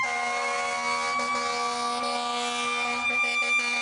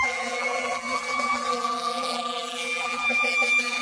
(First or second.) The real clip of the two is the first